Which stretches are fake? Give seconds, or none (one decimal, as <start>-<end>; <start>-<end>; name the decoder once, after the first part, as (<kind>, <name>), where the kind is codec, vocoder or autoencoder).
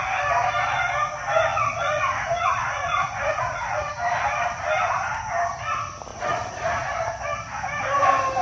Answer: 1.5-3.8 (vocoder, Vocos); 6.1-6.9